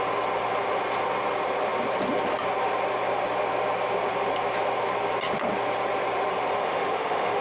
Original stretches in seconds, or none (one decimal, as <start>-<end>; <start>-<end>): 0.0-6.6